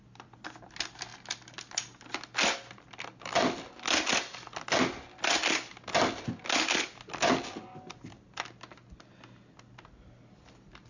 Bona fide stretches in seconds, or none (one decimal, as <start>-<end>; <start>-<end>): 0.0-10.9